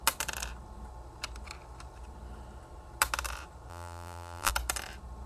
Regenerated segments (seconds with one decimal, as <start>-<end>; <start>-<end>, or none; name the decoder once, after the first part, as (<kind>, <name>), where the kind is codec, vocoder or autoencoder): 3.7-4.5 (vocoder, BigVGAN v2)

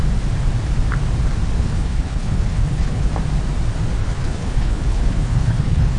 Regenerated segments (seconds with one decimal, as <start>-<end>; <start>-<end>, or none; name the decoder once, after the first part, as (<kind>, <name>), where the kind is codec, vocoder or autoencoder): 1.6-3.1 (codec, HILCodec); 4.0-6.0